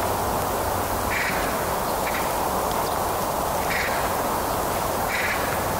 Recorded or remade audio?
recorded